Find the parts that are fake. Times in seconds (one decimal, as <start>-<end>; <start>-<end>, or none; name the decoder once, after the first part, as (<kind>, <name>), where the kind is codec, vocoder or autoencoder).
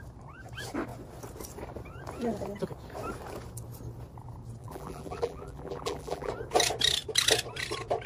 4.6-6.3 (vocoder, BigVGAN v2)